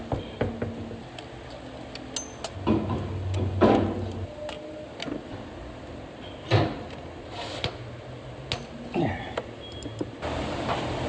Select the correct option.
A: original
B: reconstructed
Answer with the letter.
A